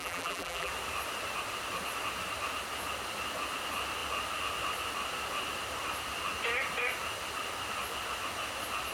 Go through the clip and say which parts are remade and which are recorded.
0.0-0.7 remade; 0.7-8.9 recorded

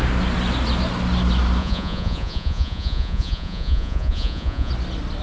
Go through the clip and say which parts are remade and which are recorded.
0.0-1.6 recorded; 1.6-4.7 remade; 4.7-5.2 recorded